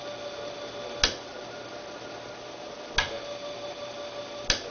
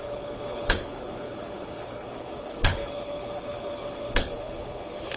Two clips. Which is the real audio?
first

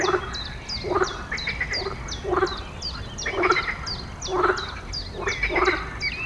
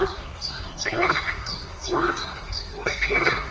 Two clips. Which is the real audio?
first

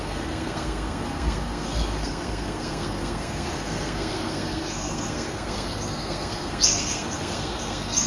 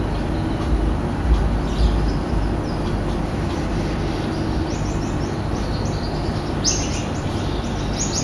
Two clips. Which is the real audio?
second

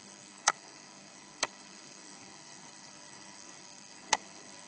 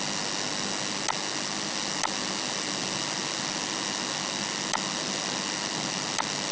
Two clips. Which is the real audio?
second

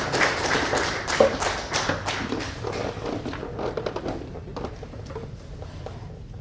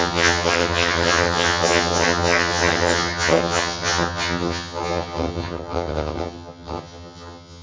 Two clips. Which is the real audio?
first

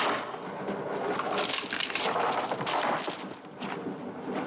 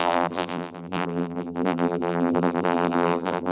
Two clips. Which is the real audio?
first